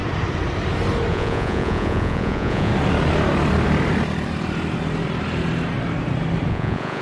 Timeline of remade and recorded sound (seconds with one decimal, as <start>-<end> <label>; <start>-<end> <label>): 0.0-1.1 recorded; 1.1-2.7 remade; 2.7-6.5 recorded; 6.5-7.0 remade

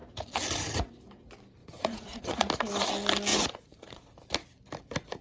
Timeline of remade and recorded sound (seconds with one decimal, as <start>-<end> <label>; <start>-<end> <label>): 0.0-1.6 recorded; 1.6-2.5 remade; 2.5-3.3 recorded; 3.3-4.0 remade; 4.0-5.2 recorded

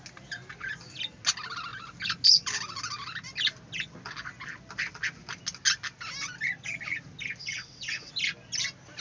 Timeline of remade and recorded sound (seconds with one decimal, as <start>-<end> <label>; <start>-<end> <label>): 0.0-7.4 recorded; 7.4-8.1 remade; 8.1-9.0 recorded

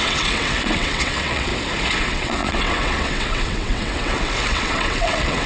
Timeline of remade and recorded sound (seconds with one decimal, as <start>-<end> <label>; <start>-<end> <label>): 0.0-1.5 remade; 1.5-2.0 recorded; 2.0-5.5 remade

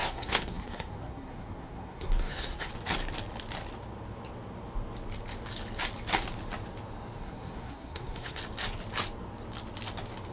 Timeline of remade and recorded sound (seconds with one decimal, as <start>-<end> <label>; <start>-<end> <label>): 0.0-2.7 remade; 2.7-7.2 recorded; 7.2-8.4 remade; 8.4-10.3 recorded

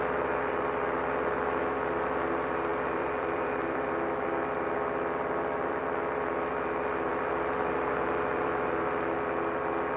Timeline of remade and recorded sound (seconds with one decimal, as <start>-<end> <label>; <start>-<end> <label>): 0.0-2.7 recorded; 2.7-5.8 remade; 5.8-7.1 recorded; 7.1-8.8 remade; 8.8-10.0 recorded

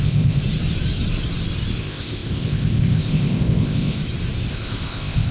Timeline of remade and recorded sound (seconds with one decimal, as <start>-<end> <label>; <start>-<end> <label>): 0.0-0.4 remade; 0.4-1.8 recorded; 1.8-4.0 remade; 4.0-4.5 recorded; 4.5-5.3 remade